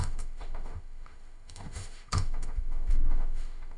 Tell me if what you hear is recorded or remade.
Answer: remade